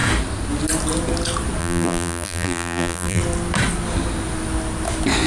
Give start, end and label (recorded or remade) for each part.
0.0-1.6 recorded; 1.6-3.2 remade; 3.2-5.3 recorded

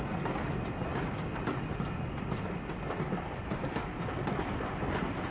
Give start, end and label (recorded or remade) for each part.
0.0-0.9 recorded; 0.9-1.7 remade; 1.7-5.3 recorded

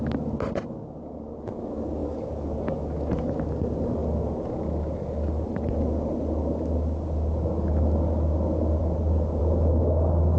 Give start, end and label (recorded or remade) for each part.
0.0-8.8 recorded; 8.8-9.4 remade; 9.4-10.4 recorded